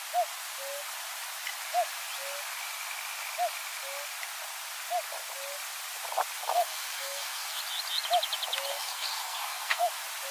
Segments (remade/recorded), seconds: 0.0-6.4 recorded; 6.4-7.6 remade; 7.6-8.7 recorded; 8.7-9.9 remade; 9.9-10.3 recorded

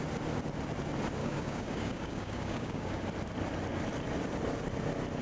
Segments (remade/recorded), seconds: 0.0-1.2 recorded; 1.2-3.0 remade; 3.0-5.2 recorded

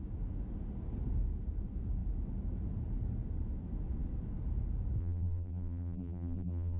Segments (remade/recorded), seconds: 0.0-5.0 recorded; 5.0-6.8 remade

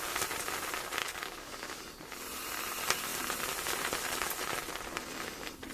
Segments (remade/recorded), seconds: 0.0-1.0 recorded; 1.0-1.8 remade; 1.8-5.7 recorded